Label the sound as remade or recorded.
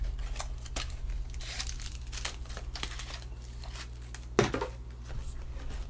recorded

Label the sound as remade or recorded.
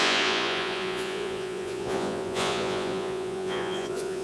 remade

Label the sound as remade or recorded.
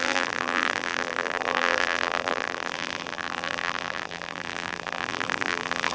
remade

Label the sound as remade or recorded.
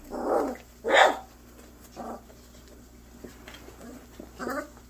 recorded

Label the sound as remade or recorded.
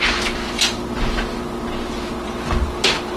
recorded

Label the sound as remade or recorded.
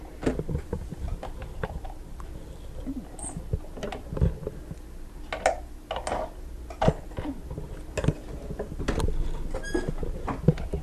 recorded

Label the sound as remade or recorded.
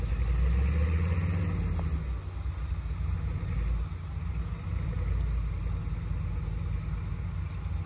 recorded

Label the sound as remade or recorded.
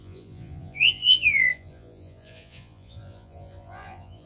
remade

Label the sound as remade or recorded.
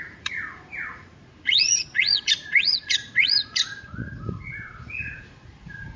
remade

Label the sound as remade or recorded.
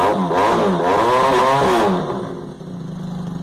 recorded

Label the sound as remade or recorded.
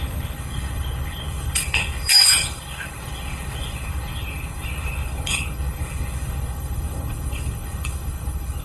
remade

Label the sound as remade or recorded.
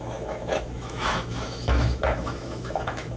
remade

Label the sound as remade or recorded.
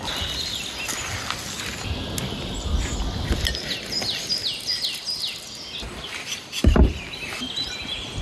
recorded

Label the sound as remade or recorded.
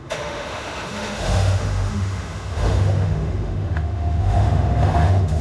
remade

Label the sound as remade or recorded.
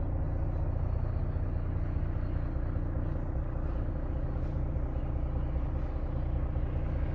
recorded